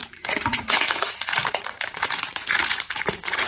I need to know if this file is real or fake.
fake